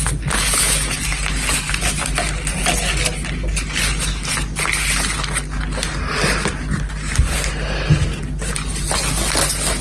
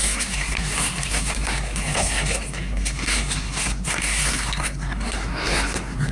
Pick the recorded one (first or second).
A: first